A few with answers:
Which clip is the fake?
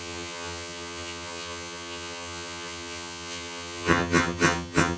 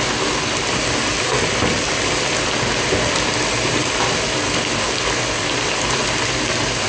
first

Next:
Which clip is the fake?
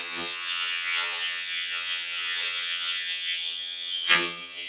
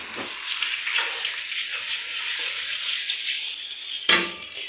first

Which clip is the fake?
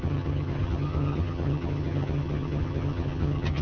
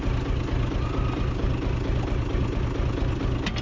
first